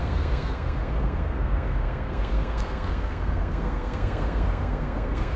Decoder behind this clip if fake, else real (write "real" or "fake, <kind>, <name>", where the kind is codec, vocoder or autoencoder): fake, codec, SNAC